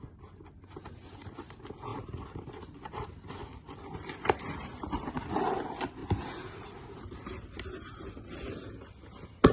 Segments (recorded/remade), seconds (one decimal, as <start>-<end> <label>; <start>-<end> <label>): 0.0-1.9 recorded; 1.9-5.3 remade; 5.3-9.5 recorded